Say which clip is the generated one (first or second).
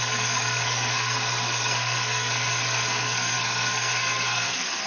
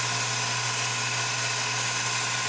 first